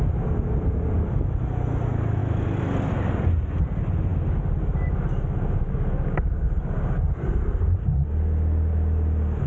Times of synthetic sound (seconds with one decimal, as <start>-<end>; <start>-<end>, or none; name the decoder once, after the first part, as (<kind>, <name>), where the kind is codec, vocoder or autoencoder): none